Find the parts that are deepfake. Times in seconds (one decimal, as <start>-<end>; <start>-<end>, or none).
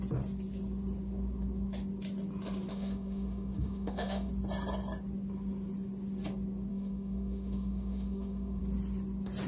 2.7-4.3; 6.7-8.6